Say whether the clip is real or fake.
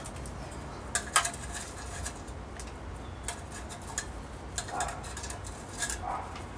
real